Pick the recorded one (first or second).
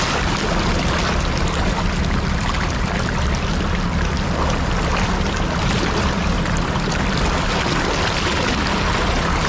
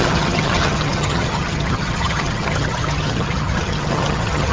first